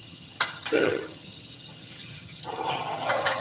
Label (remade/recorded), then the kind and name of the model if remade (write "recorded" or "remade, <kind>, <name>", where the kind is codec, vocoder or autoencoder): remade, vocoder, HiFi-GAN